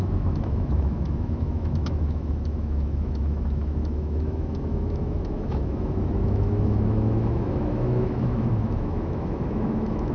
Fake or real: fake